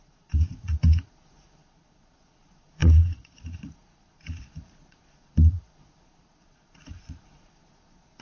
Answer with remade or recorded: remade